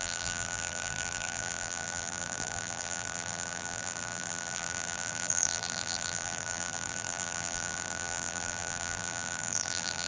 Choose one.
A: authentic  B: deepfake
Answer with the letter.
B